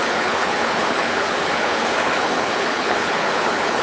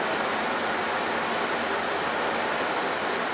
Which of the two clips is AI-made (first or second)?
first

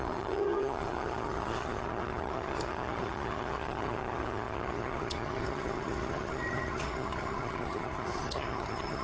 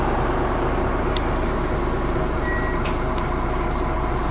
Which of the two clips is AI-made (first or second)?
first